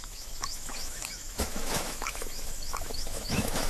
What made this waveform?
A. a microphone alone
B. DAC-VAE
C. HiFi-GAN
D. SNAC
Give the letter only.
B